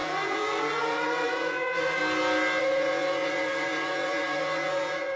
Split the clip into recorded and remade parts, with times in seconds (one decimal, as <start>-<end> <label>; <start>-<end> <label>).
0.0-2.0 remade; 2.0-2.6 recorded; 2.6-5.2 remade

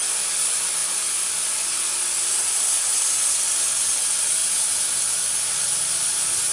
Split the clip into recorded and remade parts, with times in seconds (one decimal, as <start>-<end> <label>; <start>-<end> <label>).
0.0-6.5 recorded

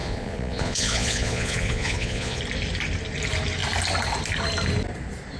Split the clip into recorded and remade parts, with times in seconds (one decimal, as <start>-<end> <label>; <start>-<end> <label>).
0.0-2.4 remade; 2.4-5.4 recorded

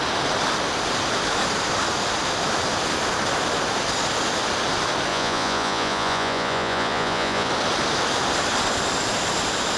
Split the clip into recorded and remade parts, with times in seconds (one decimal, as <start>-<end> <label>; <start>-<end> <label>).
0.0-5.1 recorded; 5.1-7.5 remade; 7.5-9.8 recorded

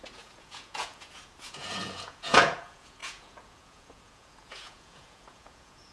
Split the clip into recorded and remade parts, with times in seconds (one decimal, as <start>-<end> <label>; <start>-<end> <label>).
0.0-5.9 remade